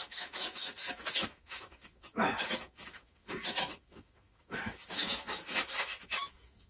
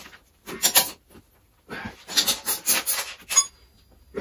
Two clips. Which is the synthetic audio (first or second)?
first